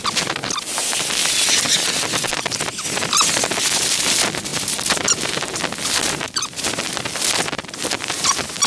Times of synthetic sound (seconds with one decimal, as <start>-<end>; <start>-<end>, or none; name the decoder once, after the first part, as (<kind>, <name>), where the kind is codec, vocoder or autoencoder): 0.0-0.4 (vocoder, BigVGAN v2); 1.5-8.7